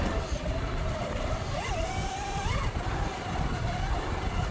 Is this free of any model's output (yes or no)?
yes